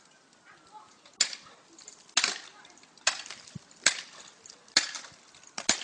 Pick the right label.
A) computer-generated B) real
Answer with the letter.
B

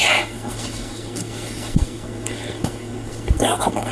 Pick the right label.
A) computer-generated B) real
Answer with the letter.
A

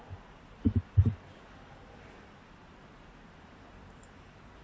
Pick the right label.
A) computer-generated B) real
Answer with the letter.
A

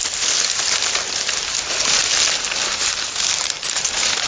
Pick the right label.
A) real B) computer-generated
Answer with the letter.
A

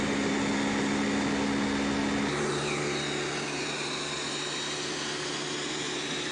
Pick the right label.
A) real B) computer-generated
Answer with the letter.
A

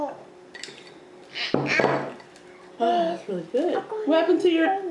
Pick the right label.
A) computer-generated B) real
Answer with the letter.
B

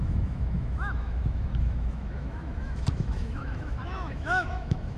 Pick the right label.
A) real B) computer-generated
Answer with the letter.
B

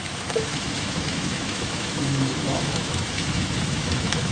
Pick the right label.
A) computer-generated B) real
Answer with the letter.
A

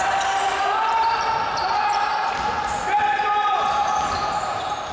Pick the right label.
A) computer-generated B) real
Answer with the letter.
A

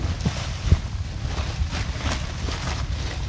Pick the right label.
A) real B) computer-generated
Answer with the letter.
A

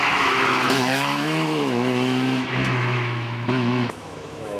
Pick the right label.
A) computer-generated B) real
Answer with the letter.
A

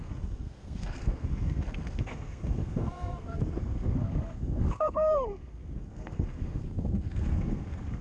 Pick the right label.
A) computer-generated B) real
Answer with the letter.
A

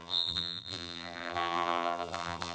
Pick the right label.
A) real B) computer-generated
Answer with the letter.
B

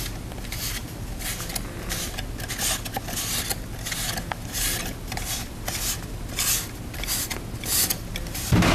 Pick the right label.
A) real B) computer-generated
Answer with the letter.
A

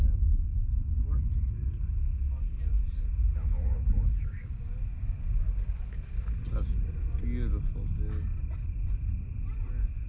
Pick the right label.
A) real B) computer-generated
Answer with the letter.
A